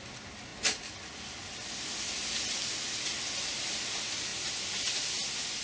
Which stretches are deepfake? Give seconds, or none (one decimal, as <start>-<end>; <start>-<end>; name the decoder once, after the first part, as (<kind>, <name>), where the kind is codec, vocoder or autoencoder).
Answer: none